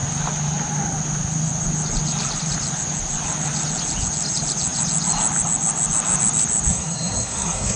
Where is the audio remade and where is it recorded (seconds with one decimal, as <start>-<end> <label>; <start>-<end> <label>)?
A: 0.0-6.7 recorded; 6.7-7.8 remade